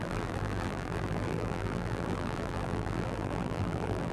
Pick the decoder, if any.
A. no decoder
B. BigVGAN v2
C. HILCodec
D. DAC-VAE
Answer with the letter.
B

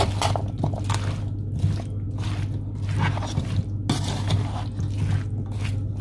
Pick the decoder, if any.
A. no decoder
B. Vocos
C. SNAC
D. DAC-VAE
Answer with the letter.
A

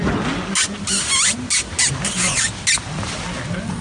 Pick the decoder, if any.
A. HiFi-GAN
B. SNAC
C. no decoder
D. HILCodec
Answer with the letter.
C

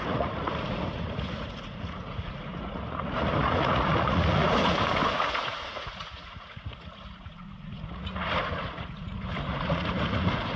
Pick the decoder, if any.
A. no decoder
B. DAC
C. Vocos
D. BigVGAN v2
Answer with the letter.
C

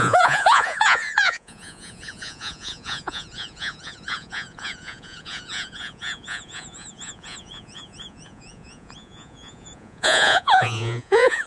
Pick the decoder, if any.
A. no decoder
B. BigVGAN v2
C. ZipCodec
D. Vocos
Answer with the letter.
D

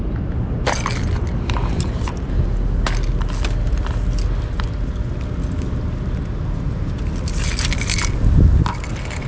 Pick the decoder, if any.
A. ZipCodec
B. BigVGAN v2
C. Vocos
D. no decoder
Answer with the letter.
D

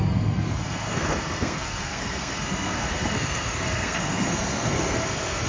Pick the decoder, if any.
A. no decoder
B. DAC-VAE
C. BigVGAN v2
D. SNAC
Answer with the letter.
D